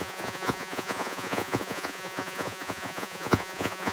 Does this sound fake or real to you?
fake